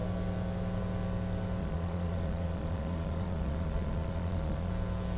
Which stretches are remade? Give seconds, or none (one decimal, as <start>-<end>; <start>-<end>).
1.6-4.7